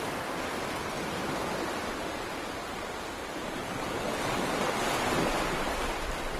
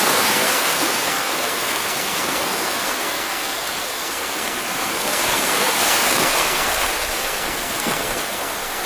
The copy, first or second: second